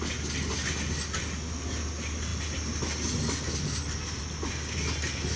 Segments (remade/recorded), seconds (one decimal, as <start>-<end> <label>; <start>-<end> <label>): 0.0-5.4 recorded